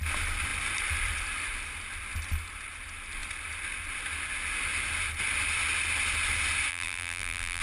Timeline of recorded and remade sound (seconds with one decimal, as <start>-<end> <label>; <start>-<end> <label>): 0.0-6.7 recorded; 6.7-7.6 remade

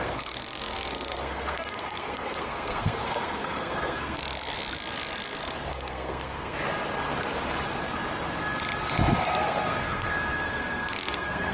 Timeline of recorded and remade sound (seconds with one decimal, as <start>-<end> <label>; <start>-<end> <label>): 0.0-4.2 remade; 4.2-5.7 recorded; 5.7-6.6 remade; 6.6-9.2 recorded; 9.2-11.5 remade

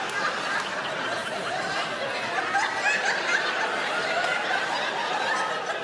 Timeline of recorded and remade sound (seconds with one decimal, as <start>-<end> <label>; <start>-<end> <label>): 0.0-5.8 recorded

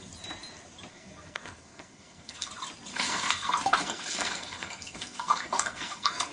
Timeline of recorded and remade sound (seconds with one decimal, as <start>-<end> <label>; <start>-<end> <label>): 0.0-0.9 recorded; 0.9-2.5 remade; 2.5-2.9 recorded; 2.9-6.3 remade

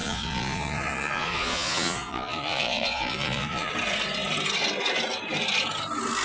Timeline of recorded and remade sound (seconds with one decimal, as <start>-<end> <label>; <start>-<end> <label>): 0.0-3.7 remade; 3.7-6.2 recorded